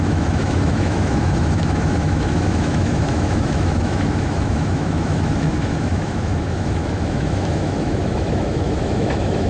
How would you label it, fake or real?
fake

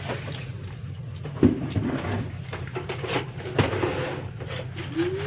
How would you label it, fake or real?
real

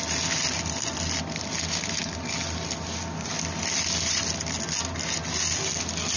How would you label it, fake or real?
real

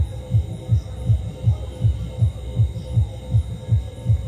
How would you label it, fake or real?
real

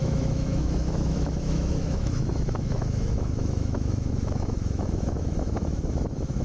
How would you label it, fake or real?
fake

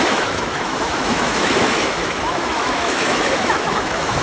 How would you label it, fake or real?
fake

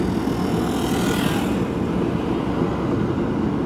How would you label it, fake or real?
real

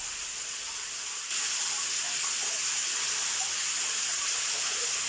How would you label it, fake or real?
real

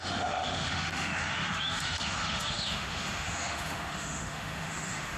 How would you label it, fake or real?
fake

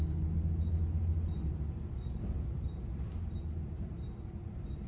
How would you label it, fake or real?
real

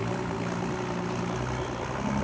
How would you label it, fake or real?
real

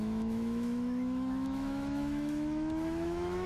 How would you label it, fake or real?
fake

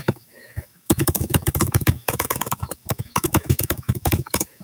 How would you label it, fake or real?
fake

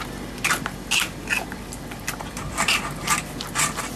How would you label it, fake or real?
real